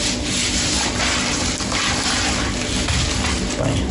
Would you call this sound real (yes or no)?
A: yes